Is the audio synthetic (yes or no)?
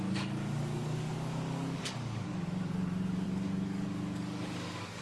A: yes